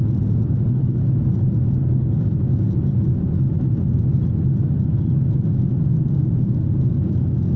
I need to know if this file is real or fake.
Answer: real